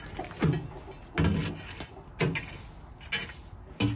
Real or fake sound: real